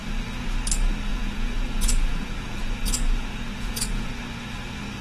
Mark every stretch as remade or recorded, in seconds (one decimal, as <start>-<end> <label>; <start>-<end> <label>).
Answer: 0.0-1.1 recorded; 1.1-4.1 remade; 4.1-5.0 recorded